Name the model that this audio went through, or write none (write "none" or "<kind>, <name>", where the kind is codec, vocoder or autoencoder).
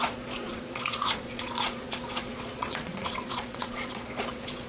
vocoder, Vocos